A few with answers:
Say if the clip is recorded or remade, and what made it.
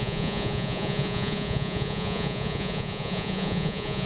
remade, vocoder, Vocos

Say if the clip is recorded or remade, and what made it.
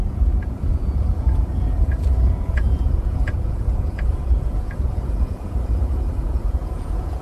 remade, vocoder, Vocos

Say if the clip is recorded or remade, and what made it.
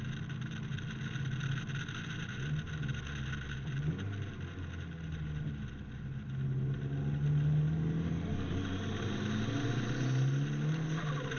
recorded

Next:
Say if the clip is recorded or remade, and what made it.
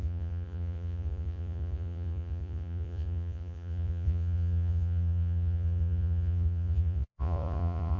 remade, vocoder, Vocos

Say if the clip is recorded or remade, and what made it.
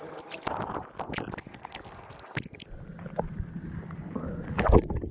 recorded